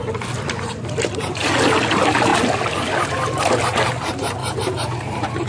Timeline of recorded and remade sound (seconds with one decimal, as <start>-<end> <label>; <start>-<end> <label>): 0.0-4.4 recorded; 4.4-5.5 remade